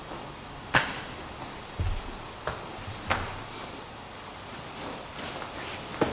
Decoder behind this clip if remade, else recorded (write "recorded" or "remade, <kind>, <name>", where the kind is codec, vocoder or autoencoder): recorded